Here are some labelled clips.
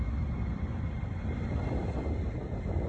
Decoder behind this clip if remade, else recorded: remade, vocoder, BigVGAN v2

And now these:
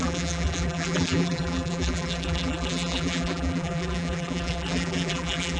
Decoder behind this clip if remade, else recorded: remade, vocoder, BigVGAN v2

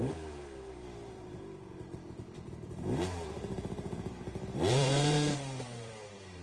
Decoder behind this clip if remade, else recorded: remade, vocoder, BigVGAN v2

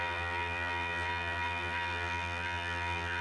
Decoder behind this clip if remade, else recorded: remade, vocoder, BigVGAN v2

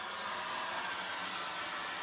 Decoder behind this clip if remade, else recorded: recorded